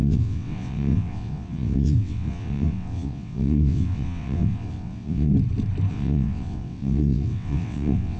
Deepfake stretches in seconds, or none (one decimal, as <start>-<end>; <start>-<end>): 0.0-5.3; 5.9-8.2